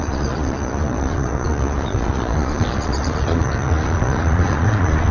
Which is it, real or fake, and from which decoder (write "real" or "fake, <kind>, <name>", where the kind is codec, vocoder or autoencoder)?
fake, vocoder, Vocos